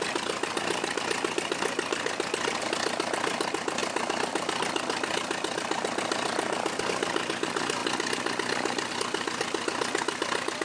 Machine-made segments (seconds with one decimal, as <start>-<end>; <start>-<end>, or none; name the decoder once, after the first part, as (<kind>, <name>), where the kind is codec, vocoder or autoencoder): none